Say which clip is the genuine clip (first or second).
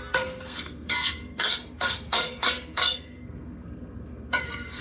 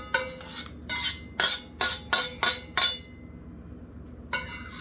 second